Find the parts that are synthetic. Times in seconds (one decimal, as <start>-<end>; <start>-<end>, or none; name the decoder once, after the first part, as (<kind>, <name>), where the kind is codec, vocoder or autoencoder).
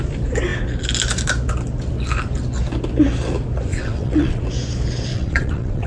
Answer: 3.7-4.4 (vocoder, WaveNeXt); 5.1-5.9